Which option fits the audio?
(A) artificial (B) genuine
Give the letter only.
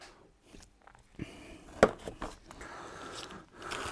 B